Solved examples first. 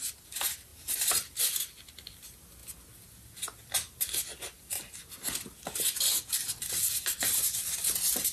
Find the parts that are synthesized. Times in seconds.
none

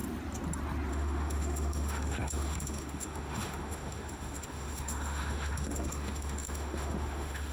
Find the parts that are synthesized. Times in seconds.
0.9-7.5 (autoencoder, DAC-VAE)

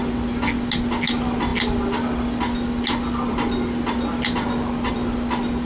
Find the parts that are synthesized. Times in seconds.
none

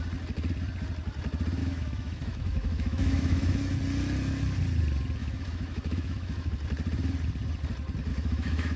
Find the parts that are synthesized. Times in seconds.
1.6-3.6 (autoencoder, DAC-VAE); 5.2-6.5; 8.1-8.8

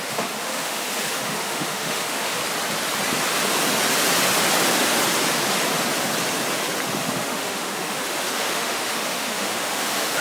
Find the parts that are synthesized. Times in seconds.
0.0-2.4 (autoencoder, DAC-VAE); 6.9-10.2

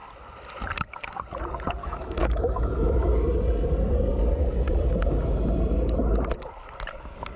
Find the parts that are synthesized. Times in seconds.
1.8-3.1 (autoencoder, DAC-VAE)